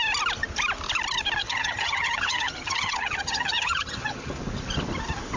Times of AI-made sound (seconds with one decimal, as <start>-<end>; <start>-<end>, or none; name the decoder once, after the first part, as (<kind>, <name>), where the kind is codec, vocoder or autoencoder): 1.4-4.4 (vocoder, HiFi-GAN)